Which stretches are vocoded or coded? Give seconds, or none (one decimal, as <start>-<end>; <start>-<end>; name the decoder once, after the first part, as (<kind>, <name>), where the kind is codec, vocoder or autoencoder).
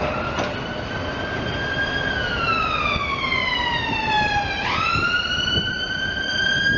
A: 0.0-6.8 (vocoder, BigVGAN v2)